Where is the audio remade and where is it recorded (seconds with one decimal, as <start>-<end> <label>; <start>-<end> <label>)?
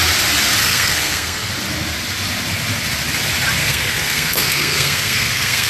0.0-0.6 recorded; 0.6-1.5 remade; 1.5-3.6 recorded; 3.6-5.7 remade